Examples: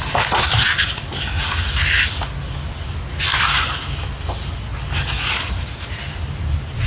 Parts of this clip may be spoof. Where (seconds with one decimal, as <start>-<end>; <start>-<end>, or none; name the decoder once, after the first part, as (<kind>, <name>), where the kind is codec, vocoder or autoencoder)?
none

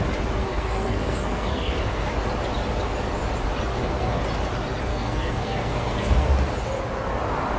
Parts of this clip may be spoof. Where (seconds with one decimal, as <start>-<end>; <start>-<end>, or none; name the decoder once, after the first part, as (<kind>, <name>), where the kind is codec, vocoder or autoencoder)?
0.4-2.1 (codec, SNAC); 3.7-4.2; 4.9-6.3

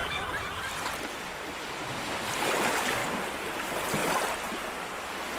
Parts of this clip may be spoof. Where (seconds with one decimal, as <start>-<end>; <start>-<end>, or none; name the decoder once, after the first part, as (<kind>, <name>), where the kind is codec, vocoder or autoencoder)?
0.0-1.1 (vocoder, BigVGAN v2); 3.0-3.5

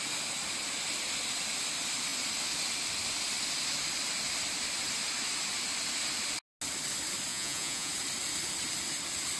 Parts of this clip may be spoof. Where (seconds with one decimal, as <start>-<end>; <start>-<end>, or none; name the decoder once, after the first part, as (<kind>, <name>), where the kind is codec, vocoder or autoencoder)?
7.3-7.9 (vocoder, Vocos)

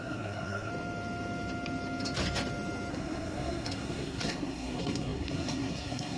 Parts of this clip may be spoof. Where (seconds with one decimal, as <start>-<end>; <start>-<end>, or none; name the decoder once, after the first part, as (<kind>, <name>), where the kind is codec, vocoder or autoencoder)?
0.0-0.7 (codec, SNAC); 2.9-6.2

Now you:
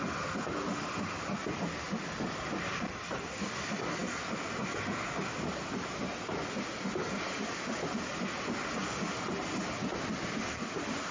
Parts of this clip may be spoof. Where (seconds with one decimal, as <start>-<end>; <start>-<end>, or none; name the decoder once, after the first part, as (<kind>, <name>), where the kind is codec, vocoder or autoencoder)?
none

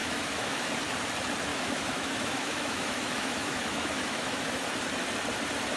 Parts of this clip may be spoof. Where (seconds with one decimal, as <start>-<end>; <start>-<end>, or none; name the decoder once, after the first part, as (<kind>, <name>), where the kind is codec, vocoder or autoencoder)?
0.0-0.7 (autoencoder, DAC-VAE); 1.5-4.5